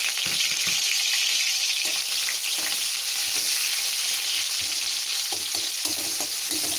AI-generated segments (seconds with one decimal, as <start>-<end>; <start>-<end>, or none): 1.9-6.0